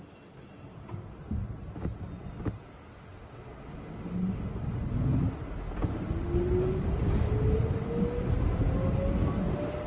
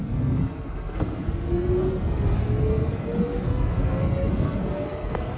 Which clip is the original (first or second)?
first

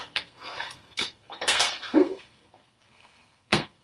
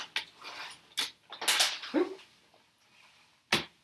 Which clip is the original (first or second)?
second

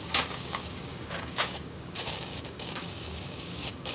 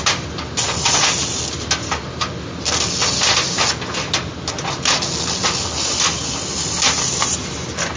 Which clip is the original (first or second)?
second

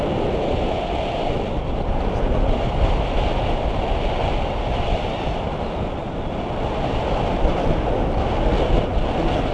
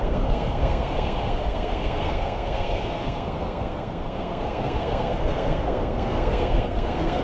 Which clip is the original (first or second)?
first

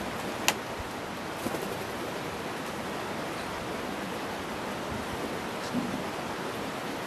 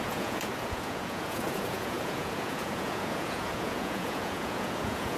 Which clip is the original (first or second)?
first